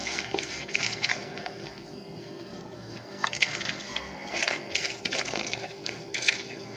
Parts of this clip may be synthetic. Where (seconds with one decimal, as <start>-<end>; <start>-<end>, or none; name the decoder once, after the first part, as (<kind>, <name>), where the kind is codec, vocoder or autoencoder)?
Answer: 0.0-6.8 (codec, SNAC)